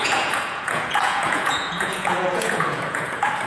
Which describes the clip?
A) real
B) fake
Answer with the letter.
B